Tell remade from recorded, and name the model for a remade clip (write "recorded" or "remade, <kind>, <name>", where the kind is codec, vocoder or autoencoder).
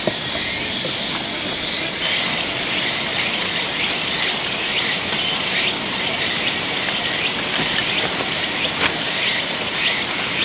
recorded